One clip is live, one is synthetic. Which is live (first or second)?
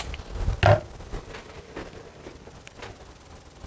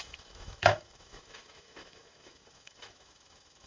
first